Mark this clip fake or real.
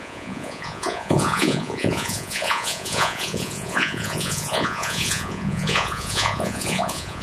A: fake